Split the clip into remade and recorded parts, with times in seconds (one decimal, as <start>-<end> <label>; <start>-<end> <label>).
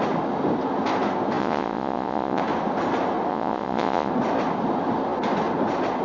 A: 0.0-1.4 recorded; 1.4-2.4 remade; 2.4-3.3 recorded; 3.3-4.1 remade; 4.1-6.0 recorded